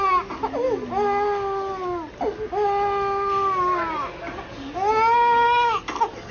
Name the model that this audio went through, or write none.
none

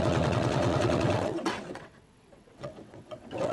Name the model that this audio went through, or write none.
vocoder, WaveNeXt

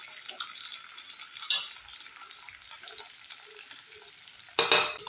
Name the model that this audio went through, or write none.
none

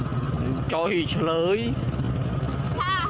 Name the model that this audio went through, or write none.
none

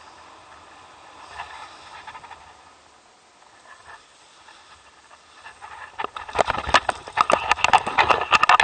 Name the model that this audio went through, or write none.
none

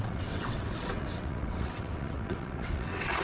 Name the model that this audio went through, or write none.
vocoder, WaveNeXt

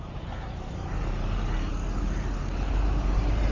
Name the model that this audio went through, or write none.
none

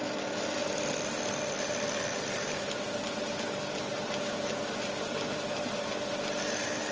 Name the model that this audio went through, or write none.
none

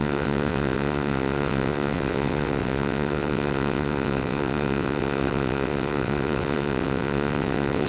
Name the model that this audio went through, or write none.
vocoder, WaveNeXt